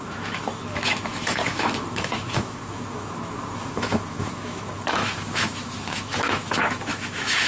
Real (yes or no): no